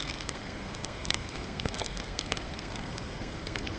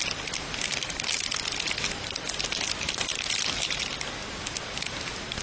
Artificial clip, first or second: first